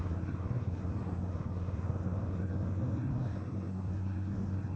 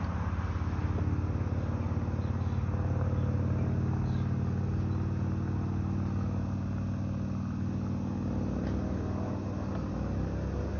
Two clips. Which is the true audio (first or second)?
second